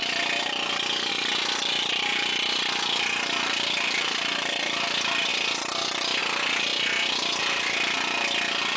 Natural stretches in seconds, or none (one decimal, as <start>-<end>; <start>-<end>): 0.0-1.1; 5.3-6.2; 6.7-7.4